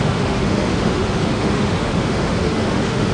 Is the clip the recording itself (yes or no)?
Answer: no